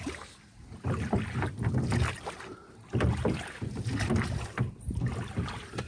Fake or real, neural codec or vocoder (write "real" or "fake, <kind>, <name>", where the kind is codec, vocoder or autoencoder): real